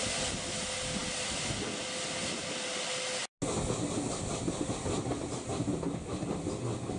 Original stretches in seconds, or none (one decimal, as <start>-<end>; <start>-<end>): 0.0-7.0